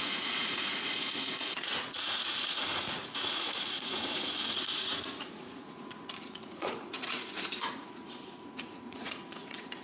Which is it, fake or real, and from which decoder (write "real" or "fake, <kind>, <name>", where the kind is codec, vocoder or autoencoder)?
fake, vocoder, Vocos